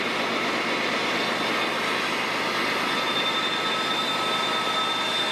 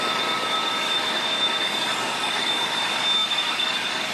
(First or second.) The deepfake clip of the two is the second